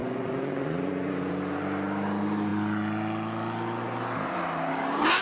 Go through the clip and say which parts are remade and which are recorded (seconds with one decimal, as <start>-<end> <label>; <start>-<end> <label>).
0.0-1.3 remade; 1.3-5.2 recorded

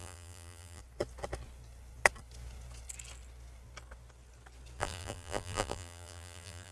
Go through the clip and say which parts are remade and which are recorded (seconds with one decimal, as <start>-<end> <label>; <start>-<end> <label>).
0.0-0.8 remade; 0.8-4.8 recorded; 4.8-6.7 remade

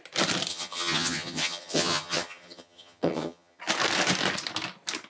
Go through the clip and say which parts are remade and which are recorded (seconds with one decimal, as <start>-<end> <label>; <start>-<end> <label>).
0.0-0.5 recorded; 0.5-3.6 remade; 3.6-5.1 recorded

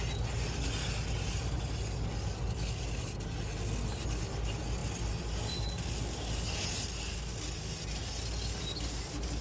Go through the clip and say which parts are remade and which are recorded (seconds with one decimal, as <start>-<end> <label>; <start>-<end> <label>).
0.0-9.4 recorded

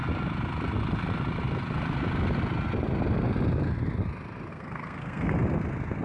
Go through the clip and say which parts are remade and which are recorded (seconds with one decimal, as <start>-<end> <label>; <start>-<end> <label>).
0.0-4.5 recorded; 4.5-5.3 remade; 5.3-6.0 recorded

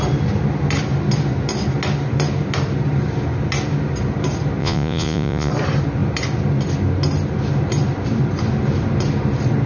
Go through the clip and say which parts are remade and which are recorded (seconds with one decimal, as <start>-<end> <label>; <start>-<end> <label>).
0.0-4.6 recorded; 4.6-5.5 remade; 5.5-9.7 recorded

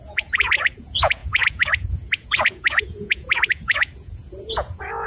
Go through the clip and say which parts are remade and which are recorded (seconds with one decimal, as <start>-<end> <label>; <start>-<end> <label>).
0.0-5.1 remade